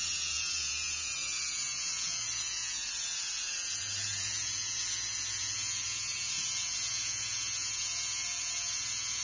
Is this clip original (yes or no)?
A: no